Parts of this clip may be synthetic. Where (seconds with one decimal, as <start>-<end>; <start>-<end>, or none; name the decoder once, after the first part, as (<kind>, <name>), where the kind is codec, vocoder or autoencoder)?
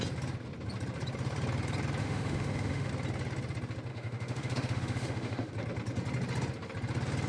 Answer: 2.0-2.9 (autoencoder, DAC-VAE); 3.9-5.5